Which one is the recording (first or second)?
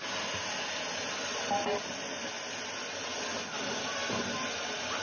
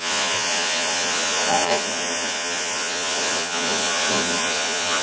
first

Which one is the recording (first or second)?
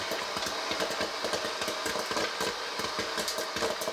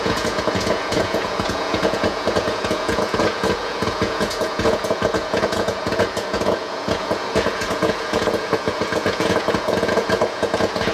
first